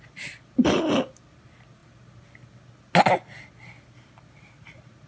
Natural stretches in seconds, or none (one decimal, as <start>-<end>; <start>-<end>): 0.0-5.1